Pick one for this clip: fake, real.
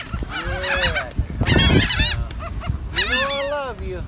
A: real